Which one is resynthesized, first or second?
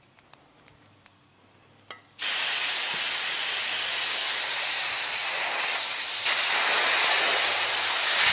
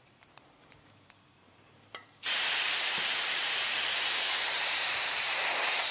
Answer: second